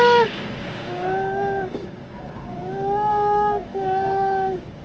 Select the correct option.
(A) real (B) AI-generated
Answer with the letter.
B